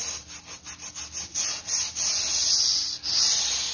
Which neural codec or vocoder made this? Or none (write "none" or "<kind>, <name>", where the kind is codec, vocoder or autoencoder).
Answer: none